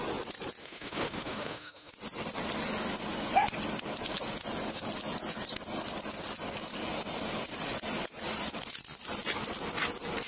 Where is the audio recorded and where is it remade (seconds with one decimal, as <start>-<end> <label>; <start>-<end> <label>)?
0.0-0.6 recorded; 0.6-1.9 remade; 1.9-10.3 recorded